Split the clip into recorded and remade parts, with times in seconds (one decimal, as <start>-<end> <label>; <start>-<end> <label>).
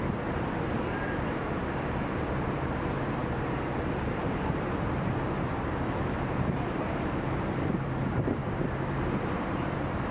0.0-10.1 remade